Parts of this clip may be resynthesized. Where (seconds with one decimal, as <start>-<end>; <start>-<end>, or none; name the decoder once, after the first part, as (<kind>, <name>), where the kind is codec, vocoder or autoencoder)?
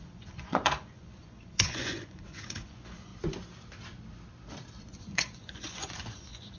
0.0-3.1 (vocoder, Vocos); 4.8-6.6